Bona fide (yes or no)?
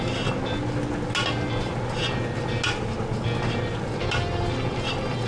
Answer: yes